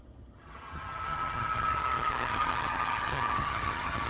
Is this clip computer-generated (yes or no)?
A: yes